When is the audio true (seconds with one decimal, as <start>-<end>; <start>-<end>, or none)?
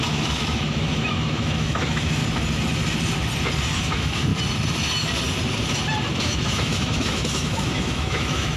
2.2-3.8; 4.3-6.1